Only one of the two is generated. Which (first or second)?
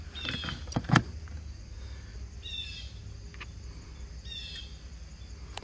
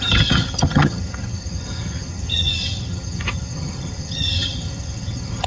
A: second